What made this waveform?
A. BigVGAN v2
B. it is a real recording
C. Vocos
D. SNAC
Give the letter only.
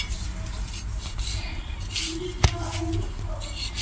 B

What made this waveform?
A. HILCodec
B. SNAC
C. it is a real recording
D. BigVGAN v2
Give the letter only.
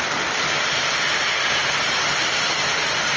C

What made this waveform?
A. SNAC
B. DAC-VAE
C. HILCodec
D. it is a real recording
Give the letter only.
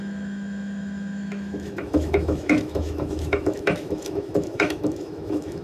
B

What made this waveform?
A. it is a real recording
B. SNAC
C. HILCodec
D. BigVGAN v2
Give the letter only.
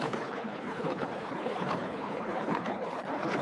C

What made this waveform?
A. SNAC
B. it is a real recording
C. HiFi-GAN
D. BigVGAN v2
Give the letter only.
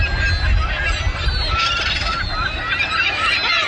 B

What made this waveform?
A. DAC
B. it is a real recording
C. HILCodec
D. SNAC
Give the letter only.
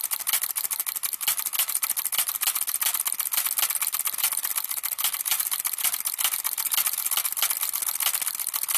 B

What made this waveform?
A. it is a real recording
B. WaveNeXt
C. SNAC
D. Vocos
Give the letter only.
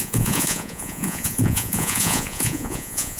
D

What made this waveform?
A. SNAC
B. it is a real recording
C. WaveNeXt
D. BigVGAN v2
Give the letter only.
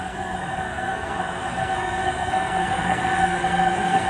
A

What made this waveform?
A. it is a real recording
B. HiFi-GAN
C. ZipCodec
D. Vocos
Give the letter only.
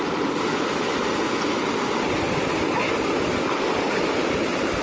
A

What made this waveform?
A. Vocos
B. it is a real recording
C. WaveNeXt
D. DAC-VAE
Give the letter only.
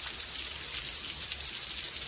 B